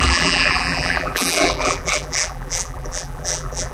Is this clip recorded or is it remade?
remade